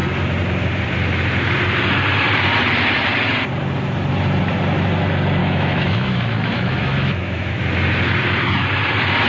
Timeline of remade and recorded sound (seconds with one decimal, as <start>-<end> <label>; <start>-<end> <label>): 0.0-5.4 recorded; 5.4-7.6 remade; 7.6-9.3 recorded

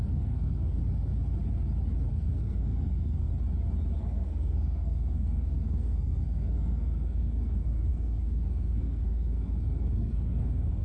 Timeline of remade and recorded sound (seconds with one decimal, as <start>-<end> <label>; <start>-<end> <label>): 0.0-0.8 remade; 0.8-2.1 recorded; 2.1-3.3 remade; 3.3-4.0 recorded; 4.0-10.8 remade